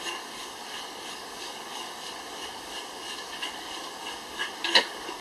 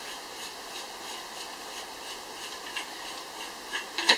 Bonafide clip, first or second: second